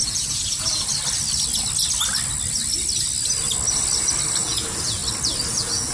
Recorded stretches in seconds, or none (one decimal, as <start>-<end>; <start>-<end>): 0.9-4.4; 5.0-5.5